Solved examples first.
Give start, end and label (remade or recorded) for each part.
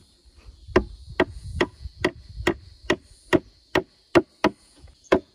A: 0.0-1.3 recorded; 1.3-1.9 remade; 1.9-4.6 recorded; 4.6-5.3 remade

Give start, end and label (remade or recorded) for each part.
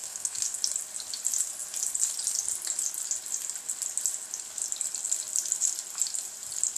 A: 0.0-0.6 remade; 0.6-6.8 recorded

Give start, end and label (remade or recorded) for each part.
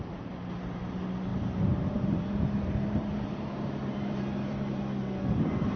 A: 0.0-1.3 recorded; 1.3-4.8 remade; 4.8-5.8 recorded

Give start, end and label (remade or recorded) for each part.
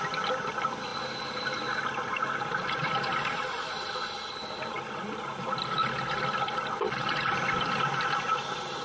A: 0.0-8.8 recorded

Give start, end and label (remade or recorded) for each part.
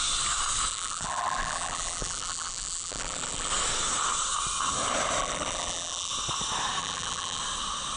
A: 0.0-0.7 recorded; 0.7-3.5 remade; 3.5-5.2 recorded; 5.2-6.1 remade; 6.1-6.8 recorded; 6.8-7.4 remade; 7.4-8.0 recorded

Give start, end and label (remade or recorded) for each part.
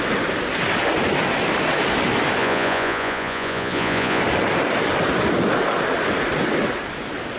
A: 0.0-2.4 recorded; 2.4-4.2 remade; 4.2-7.4 recorded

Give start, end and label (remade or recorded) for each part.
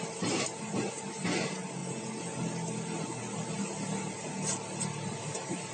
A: 0.0-5.7 recorded